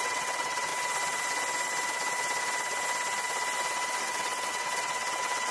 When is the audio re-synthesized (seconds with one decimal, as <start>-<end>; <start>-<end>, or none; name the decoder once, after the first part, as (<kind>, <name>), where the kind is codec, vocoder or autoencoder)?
0.0-0.7 (vocoder, WaveNeXt); 4.0-5.5